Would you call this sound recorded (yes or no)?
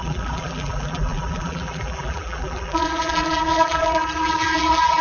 no